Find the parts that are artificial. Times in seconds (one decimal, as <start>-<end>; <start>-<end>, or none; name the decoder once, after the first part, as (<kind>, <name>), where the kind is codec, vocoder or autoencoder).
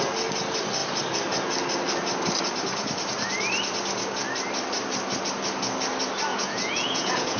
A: 6.3-7.4 (vocoder, Vocos)